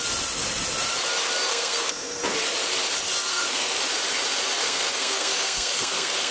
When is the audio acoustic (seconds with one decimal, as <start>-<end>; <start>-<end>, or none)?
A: 0.0-1.5; 2.2-3.3; 3.8-4.6